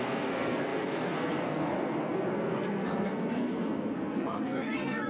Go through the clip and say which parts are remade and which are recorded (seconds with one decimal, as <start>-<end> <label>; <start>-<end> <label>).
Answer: 0.0-5.1 remade